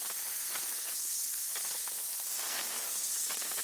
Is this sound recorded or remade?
remade